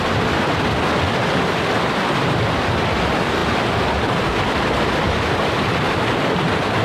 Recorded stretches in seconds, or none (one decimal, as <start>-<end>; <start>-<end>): 0.0-6.8